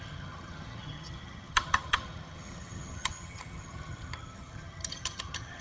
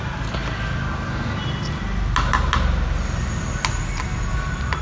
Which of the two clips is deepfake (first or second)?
first